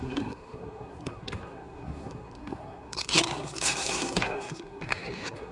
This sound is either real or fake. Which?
fake